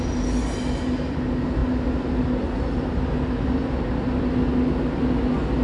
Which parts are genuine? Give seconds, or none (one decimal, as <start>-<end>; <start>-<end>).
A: 0.0-5.6